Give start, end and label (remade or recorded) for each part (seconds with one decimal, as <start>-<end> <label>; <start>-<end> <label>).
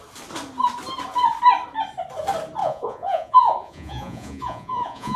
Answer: 0.0-2.6 recorded; 2.6-5.2 remade